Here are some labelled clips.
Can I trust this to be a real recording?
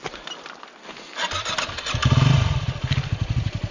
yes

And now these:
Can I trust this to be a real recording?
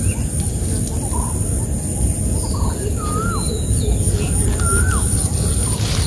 yes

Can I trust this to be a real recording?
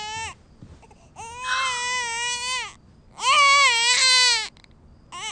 yes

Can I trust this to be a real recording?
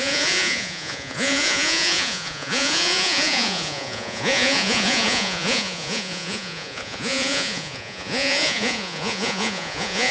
no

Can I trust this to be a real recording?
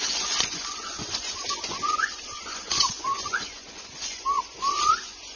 no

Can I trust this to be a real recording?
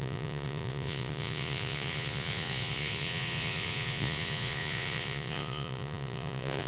no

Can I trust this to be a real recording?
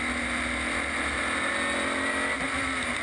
yes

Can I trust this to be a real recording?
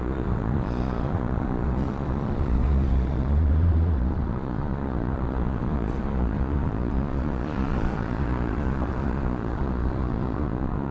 no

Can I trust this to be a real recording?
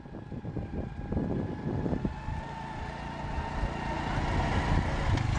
yes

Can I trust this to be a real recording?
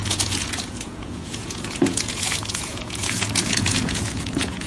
no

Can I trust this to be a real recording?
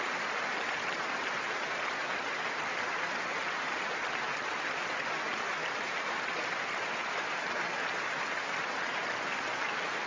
yes